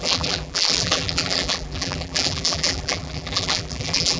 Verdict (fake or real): fake